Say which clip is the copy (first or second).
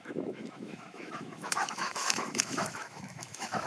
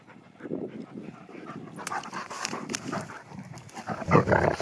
first